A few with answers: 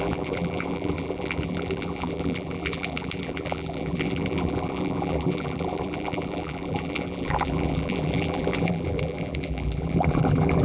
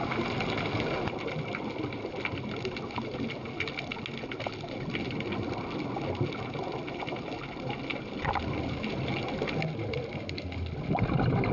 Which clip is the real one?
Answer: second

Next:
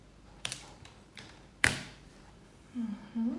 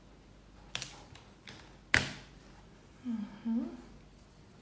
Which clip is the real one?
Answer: second